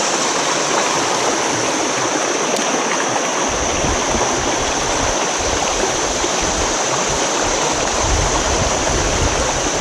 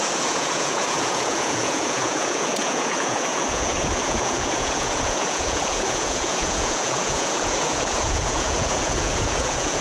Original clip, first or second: first